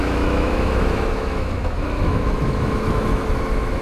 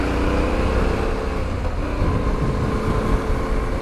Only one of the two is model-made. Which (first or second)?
first